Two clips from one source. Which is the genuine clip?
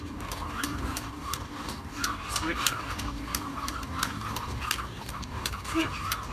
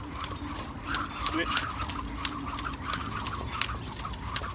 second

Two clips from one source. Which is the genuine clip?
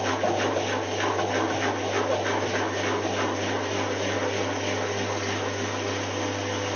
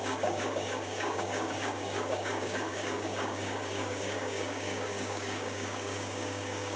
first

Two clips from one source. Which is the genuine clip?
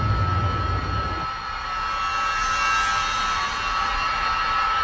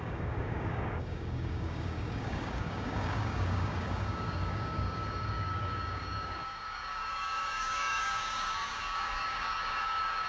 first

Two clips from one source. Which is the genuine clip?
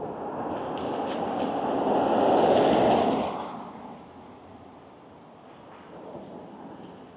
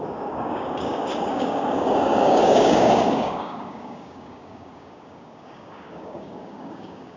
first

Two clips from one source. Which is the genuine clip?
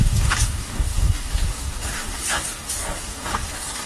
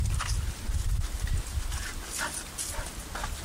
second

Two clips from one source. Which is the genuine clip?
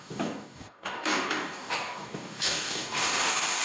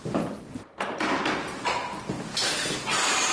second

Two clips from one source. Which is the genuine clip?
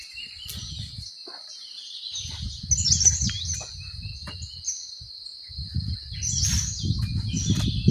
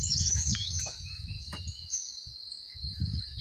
first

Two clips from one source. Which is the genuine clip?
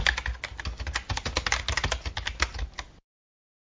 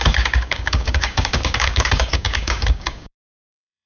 first